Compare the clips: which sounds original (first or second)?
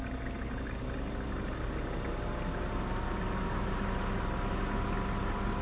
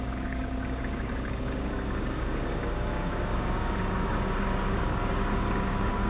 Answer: first